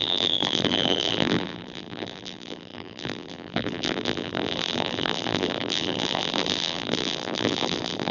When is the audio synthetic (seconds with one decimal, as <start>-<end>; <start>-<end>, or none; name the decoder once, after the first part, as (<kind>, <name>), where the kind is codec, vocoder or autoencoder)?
0.0-8.1 (vocoder, BigVGAN v2)